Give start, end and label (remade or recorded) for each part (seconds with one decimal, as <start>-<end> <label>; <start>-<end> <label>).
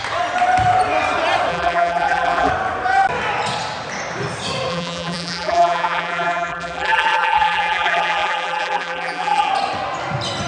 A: 0.0-1.5 recorded; 1.5-2.5 remade; 2.5-4.7 recorded; 4.7-9.5 remade; 9.5-10.5 recorded